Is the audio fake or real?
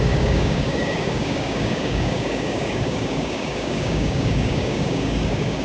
fake